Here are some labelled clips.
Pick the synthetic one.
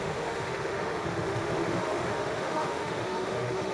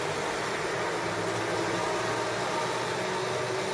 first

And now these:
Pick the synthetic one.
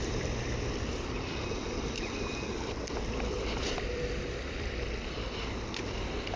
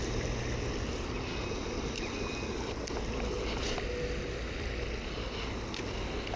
first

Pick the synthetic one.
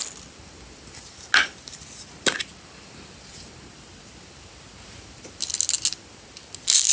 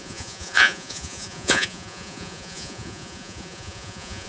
second